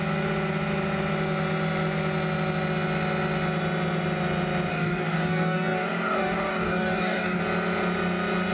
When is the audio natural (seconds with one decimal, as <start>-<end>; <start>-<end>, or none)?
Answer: 0.0-4.7; 7.4-8.5